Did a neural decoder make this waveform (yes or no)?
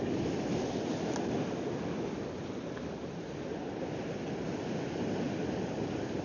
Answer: no